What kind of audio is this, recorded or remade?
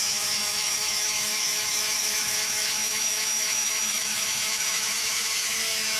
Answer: remade